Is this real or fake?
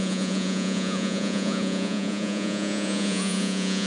fake